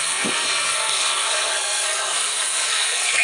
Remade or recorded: remade